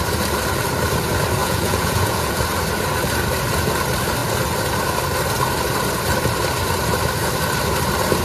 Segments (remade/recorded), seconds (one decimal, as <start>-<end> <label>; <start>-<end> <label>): 0.0-1.4 recorded; 1.4-2.4 remade; 2.4-8.2 recorded